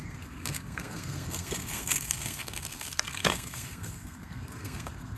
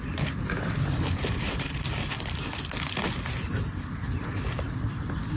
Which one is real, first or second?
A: second